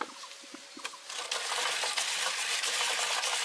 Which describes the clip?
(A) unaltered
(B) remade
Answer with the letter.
A